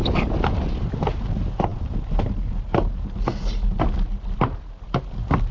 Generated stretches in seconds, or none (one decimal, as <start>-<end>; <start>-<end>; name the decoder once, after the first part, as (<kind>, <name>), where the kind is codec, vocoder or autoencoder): none